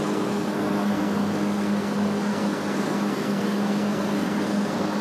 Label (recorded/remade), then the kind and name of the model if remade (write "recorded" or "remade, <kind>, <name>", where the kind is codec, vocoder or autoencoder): remade, codec, SNAC